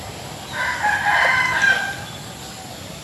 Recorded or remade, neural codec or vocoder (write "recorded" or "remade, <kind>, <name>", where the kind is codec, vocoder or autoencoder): recorded